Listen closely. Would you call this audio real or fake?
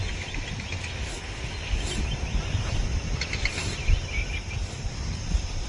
real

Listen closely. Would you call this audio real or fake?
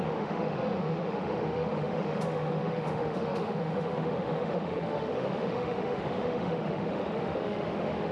fake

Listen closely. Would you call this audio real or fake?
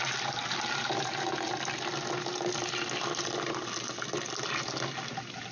real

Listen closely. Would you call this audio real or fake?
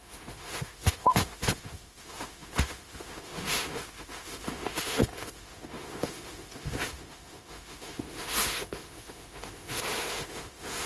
fake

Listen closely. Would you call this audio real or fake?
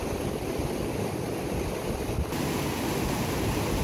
real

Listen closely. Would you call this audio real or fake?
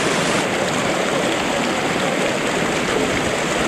real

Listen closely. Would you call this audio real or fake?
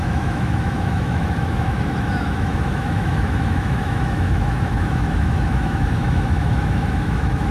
fake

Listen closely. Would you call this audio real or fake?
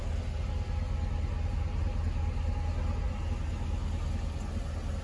real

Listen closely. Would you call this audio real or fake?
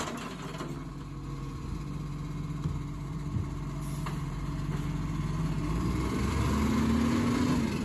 real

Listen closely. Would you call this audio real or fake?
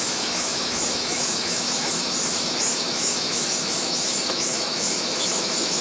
fake